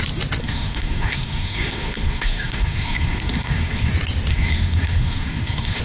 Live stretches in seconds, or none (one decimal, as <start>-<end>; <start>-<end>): 0.0-0.4; 3.9-4.3

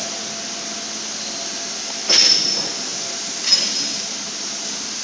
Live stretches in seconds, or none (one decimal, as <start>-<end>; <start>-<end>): 0.0-5.0

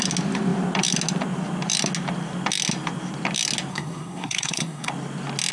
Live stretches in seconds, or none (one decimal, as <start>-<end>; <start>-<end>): 0.0-3.7; 4.9-5.5

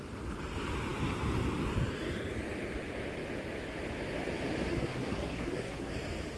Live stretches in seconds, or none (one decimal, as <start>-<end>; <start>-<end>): 0.0-4.7; 5.9-6.4

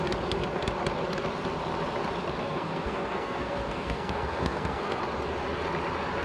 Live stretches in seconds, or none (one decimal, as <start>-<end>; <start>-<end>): 0.0-2.4; 5.0-6.2